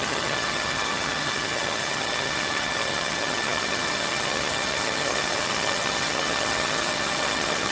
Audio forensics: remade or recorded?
remade